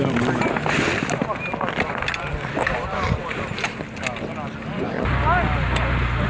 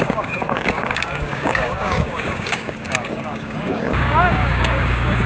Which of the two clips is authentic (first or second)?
first